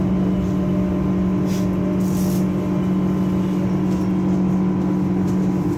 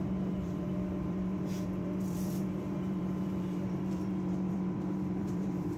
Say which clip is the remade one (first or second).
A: second